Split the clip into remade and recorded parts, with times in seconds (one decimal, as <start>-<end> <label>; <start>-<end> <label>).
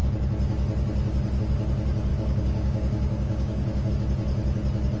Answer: 0.0-2.1 recorded; 2.1-3.9 remade; 3.9-5.0 recorded